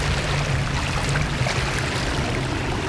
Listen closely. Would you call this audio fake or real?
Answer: real